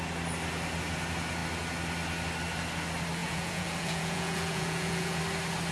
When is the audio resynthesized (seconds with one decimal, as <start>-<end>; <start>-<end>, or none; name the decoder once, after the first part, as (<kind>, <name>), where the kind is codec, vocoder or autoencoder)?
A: 3.2-5.2 (vocoder, Vocos)